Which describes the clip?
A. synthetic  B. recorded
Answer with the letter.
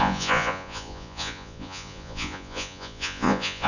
A